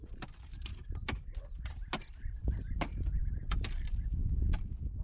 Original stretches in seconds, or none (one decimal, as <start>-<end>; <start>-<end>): 0.7-3.3; 4.2-5.0